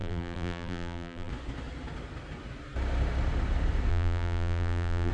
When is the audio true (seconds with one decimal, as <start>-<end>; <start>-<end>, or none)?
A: 1.3-3.9